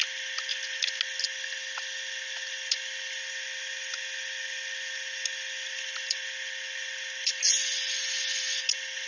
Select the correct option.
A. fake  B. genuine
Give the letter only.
B